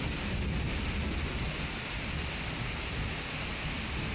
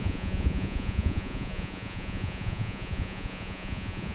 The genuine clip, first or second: first